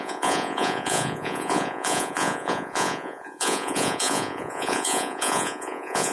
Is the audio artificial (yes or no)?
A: yes